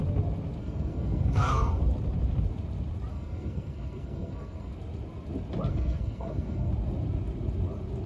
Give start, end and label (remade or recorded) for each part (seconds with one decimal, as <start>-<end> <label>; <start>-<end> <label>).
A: 0.0-0.6 recorded; 0.6-1.8 remade; 1.8-3.1 recorded; 3.1-4.7 remade; 4.7-5.7 recorded; 5.7-6.7 remade; 6.7-8.1 recorded